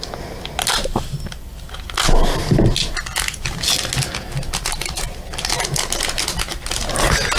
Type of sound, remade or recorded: recorded